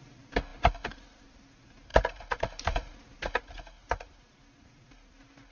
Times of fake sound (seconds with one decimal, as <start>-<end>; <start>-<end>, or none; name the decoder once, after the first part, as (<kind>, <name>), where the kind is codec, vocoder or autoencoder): 1.9-2.9 (vocoder, BigVGAN v2)